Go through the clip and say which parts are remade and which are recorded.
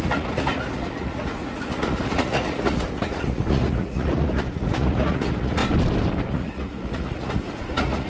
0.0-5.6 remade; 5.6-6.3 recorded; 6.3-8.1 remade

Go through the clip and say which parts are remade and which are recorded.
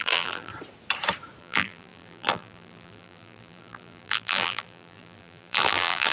0.0-0.5 remade; 0.5-1.4 recorded; 1.4-6.1 remade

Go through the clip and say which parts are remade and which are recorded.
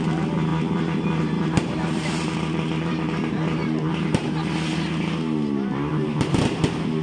0.0-0.5 recorded; 0.5-4.3 remade; 4.3-5.9 recorded; 5.9-6.4 remade; 6.4-7.0 recorded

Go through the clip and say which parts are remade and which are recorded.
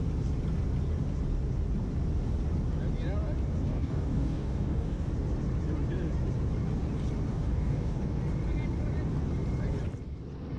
0.0-3.7 recorded; 3.7-5.1 remade; 5.1-7.3 recorded; 7.3-8.2 remade; 8.2-10.6 recorded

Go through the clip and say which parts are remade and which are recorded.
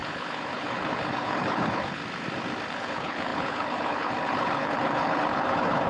0.0-2.0 remade; 2.0-2.7 recorded; 2.7-5.9 remade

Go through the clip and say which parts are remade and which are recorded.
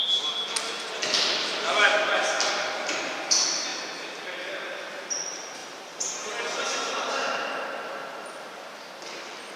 0.0-5.6 recorded; 5.6-7.1 remade; 7.1-9.6 recorded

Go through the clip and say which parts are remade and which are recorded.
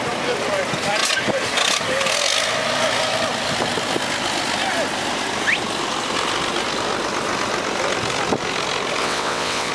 0.0-9.0 recorded; 9.0-9.7 remade